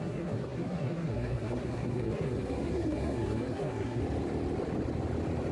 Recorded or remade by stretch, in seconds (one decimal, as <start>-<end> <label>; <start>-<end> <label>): 0.0-4.0 remade; 4.0-5.5 recorded